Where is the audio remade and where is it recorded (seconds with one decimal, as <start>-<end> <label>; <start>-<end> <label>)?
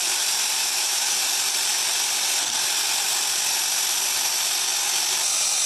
0.0-0.6 recorded; 0.6-1.2 remade; 1.2-5.7 recorded